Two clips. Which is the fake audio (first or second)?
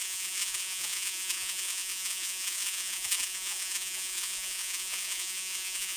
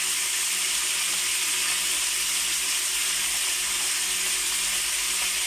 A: first